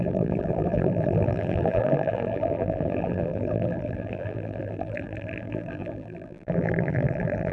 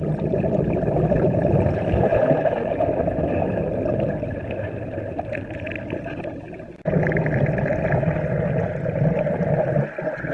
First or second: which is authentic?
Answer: second